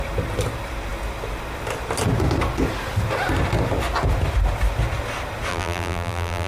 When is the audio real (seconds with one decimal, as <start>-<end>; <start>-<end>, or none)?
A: 0.0-5.5